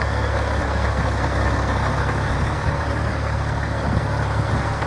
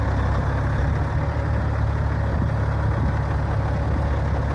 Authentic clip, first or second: second